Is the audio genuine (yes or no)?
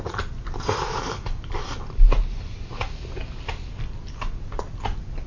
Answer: yes